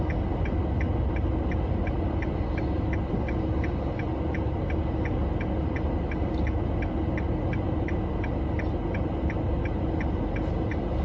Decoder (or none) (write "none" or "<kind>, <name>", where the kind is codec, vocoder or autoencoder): none